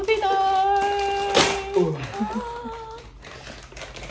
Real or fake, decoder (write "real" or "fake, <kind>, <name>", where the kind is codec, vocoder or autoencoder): real